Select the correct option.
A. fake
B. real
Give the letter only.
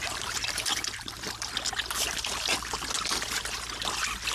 B